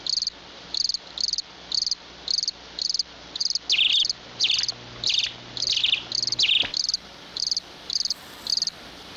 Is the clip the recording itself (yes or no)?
no